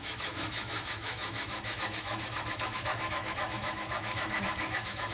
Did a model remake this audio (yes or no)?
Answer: yes